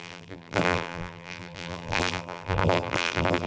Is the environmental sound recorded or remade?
remade